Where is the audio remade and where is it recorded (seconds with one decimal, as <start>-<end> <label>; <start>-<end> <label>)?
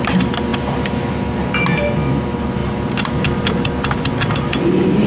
0.0-5.1 recorded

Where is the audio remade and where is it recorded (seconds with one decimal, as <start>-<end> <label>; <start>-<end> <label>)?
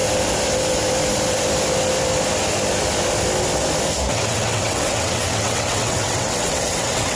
0.0-4.1 recorded; 4.1-7.2 remade